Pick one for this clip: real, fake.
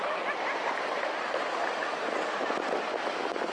real